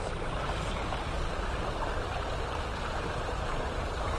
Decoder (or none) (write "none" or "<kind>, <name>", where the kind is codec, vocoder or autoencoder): none